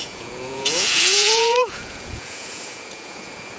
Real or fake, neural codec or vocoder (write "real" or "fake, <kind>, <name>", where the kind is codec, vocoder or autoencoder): fake, vocoder, Vocos